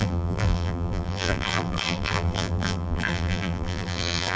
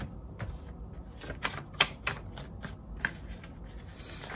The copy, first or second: first